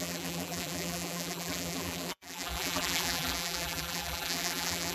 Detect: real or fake fake